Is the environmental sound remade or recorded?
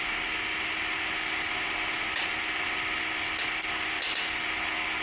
recorded